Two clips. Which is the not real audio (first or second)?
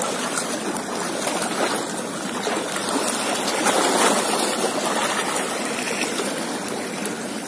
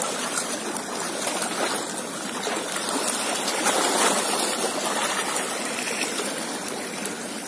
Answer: second